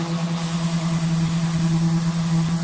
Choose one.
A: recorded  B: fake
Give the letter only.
A